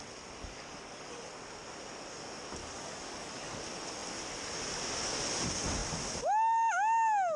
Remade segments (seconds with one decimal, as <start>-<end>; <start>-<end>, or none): 0.4-1.3; 2.6-3.6